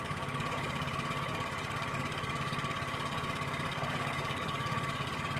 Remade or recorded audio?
remade